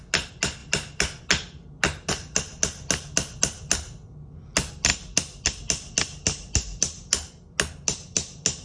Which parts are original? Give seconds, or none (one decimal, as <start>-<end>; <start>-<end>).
0.0-8.6